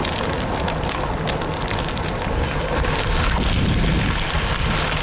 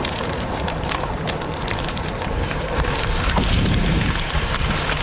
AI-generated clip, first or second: second